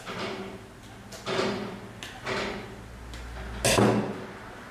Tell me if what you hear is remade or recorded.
recorded